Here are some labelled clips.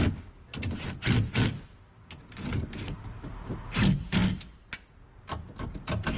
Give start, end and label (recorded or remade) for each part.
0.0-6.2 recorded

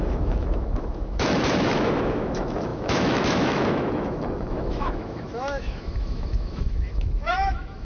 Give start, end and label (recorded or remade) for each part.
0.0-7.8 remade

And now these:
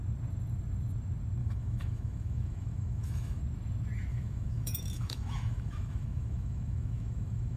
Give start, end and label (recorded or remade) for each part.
0.0-1.4 recorded; 1.4-3.4 remade; 3.4-4.1 recorded; 4.1-7.6 remade